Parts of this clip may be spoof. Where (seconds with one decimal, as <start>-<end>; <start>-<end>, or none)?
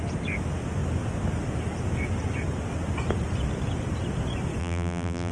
4.6-5.3